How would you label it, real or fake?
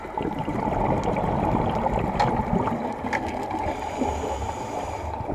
real